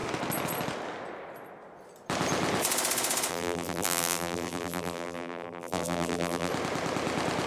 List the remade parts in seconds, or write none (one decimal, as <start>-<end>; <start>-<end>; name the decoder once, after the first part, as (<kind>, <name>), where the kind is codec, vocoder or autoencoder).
3.3-6.5 (vocoder, BigVGAN v2)